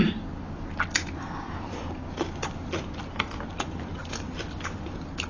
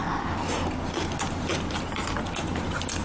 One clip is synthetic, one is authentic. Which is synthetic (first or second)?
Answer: first